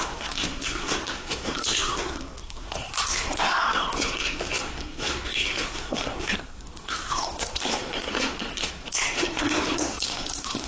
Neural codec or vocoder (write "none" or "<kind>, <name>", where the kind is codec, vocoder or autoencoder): codec, SNAC